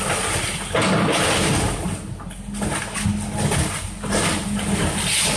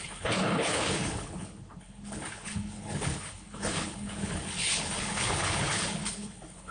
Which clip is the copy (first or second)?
second